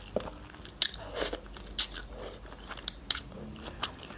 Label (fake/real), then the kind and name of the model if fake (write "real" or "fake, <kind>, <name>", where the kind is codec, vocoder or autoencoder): real